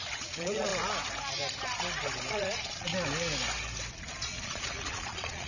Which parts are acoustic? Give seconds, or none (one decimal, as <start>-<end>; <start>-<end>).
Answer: 0.7-2.3; 2.9-3.9